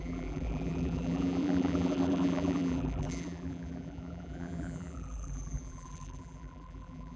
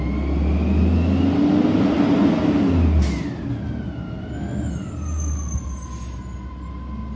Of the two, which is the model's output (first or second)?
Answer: first